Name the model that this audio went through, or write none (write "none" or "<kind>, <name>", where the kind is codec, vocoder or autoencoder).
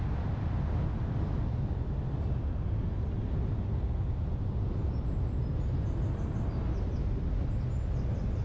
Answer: none